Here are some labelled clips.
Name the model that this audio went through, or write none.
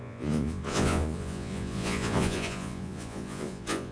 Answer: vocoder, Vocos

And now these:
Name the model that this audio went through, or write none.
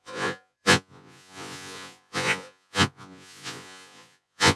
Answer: vocoder, Vocos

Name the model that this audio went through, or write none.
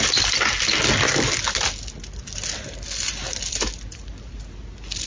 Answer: none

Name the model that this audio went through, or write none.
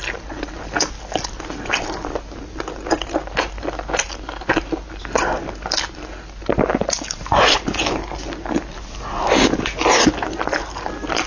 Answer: none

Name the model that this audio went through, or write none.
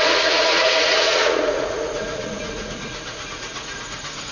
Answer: vocoder, Vocos